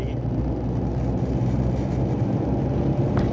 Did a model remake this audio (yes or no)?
no